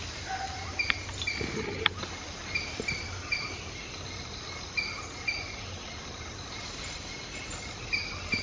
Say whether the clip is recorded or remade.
recorded